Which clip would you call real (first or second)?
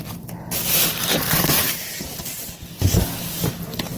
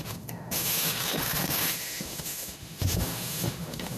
first